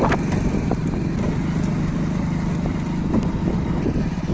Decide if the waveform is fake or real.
real